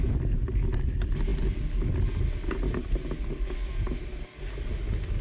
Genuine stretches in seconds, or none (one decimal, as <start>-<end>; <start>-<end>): 0.0-5.2